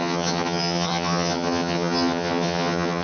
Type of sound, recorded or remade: remade